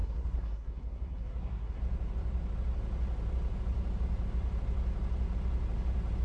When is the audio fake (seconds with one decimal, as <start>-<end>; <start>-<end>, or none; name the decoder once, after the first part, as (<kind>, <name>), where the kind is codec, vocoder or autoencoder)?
0.0-1.8 (codec, SNAC)